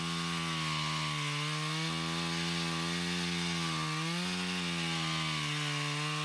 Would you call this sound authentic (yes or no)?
yes